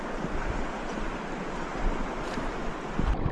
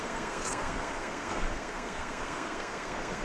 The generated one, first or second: second